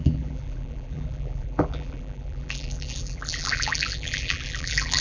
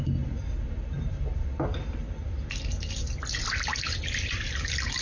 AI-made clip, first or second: first